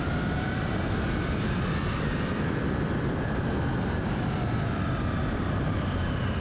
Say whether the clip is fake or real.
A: fake